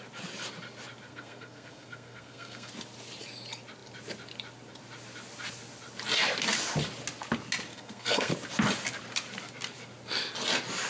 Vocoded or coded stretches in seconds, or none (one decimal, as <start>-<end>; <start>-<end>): 1.1-2.7; 7.7-8.3